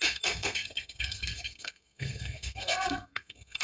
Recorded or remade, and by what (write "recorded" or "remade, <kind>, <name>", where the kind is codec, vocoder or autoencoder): remade, codec, SNAC